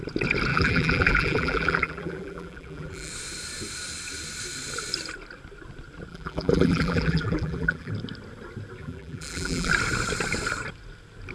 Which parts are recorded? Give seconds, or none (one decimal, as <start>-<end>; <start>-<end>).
0.0-0.5; 3.1-6.1; 7.9-8.8; 9.7-11.3